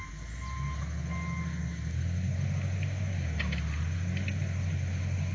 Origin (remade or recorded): recorded